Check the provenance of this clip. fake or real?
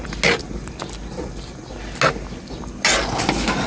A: real